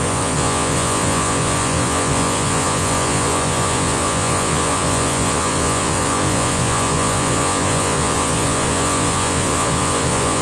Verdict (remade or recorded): remade